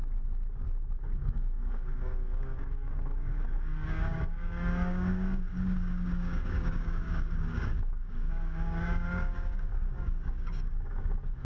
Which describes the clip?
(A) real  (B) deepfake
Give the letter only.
B